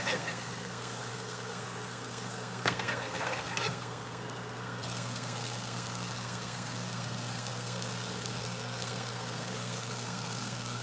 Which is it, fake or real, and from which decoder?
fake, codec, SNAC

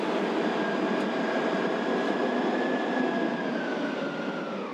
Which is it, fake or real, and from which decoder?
real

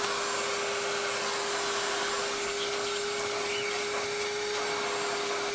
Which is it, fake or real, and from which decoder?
real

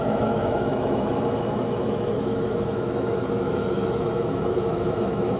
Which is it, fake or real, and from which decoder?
fake, autoencoder, DAC-VAE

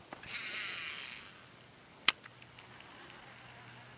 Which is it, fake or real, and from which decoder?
real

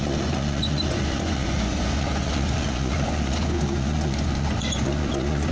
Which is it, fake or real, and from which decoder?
fake, vocoder, Vocos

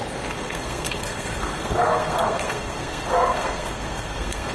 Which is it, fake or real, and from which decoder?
fake, codec, SNAC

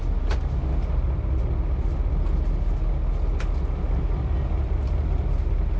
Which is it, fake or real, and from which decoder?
real